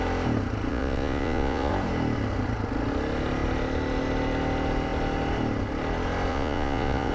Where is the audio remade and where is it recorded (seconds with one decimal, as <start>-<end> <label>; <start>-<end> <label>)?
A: 0.0-0.7 recorded; 0.7-1.7 remade; 1.7-6.3 recorded; 6.3-7.1 remade